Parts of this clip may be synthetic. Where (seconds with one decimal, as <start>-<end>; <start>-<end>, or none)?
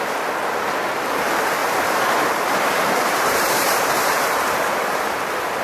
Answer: 1.6-4.7